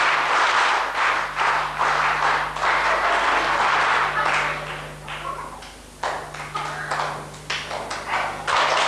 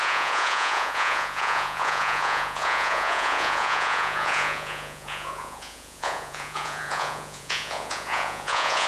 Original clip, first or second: first